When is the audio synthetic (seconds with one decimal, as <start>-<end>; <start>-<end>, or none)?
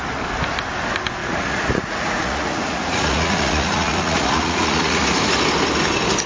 1.2-5.0